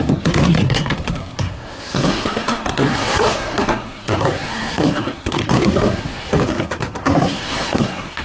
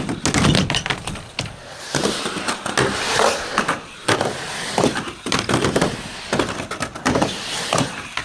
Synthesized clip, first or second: first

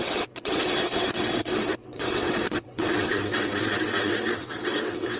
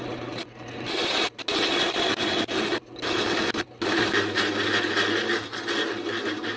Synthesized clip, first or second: first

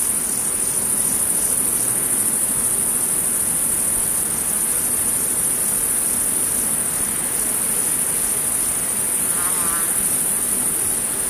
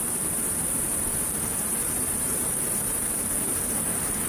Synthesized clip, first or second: second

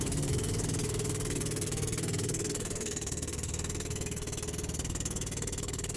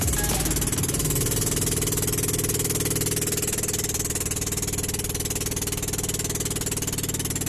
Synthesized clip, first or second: first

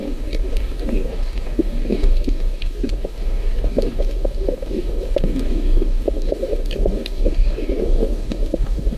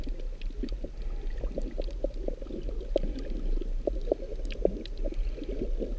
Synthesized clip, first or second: first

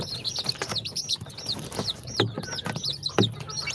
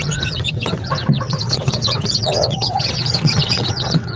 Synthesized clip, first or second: second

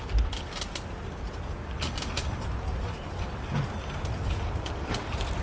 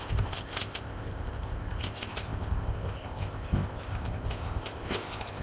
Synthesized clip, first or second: second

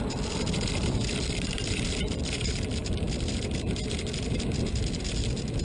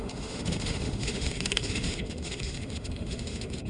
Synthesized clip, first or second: second